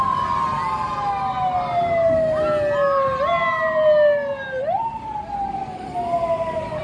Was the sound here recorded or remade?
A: recorded